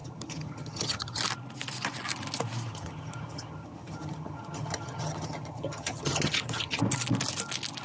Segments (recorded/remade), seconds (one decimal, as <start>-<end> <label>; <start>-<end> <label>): 0.0-1.2 remade; 1.2-2.7 recorded; 2.7-6.8 remade; 6.8-7.8 recorded